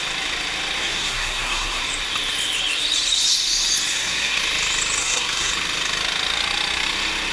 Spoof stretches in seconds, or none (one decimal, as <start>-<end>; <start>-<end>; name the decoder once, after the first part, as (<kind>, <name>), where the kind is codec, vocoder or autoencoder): 0.8-1.8 (codec, SNAC); 3.9-4.4; 5.0-5.5